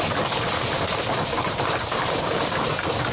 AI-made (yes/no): yes